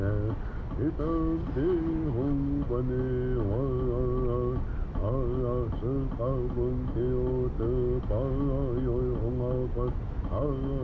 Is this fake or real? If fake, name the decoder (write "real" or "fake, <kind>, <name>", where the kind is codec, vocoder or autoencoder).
real